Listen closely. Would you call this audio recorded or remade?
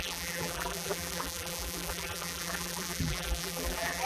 remade